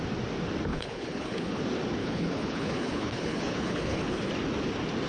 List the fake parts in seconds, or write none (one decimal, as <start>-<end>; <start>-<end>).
0.7-1.6; 2.0-4.3